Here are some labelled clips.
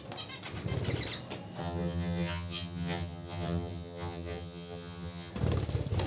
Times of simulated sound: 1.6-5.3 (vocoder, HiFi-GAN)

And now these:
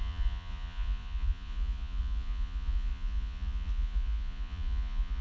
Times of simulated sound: 0.0-5.2 (vocoder, Vocos)

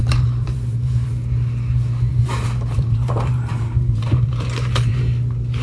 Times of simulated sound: 0.0-1.1 (vocoder, BigVGAN v2); 2.1-5.0

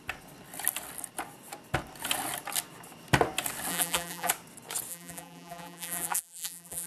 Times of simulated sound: 3.7-4.3 (vocoder, BigVGAN v2); 4.9-6.9

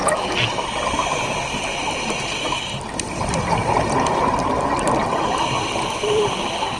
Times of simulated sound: none

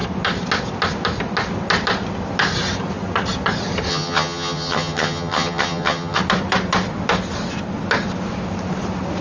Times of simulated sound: 3.9-6.2 (vocoder, HiFi-GAN)

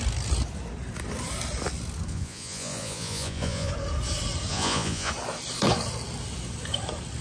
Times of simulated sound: 2.1-3.7 (vocoder, Vocos); 4.5-5.1